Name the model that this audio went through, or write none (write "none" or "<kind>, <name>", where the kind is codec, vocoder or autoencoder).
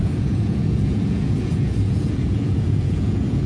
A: vocoder, Vocos